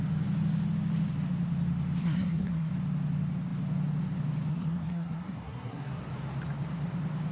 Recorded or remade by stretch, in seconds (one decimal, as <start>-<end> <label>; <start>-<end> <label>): 0.0-2.0 recorded; 2.0-2.7 remade; 2.7-4.5 recorded; 4.5-6.0 remade; 6.0-7.3 recorded